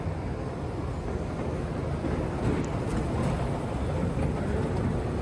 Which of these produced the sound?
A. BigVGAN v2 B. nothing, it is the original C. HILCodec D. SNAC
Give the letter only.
B